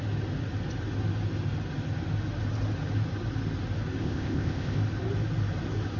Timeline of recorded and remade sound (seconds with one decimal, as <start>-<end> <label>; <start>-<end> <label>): 0.0-4.0 recorded; 4.0-4.8 remade; 4.8-6.0 recorded